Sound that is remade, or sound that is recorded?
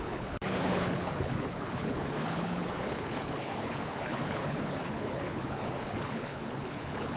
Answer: remade